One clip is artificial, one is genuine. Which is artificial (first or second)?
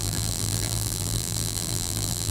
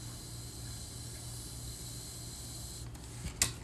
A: first